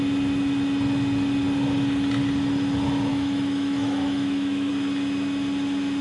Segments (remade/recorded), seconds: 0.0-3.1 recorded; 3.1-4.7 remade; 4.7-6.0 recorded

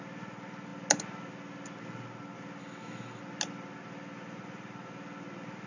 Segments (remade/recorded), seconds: 0.0-2.6 recorded; 2.6-3.2 remade; 3.2-5.7 recorded

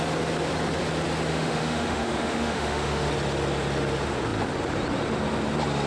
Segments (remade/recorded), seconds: 0.0-1.3 recorded; 1.3-3.1 remade; 3.1-5.9 recorded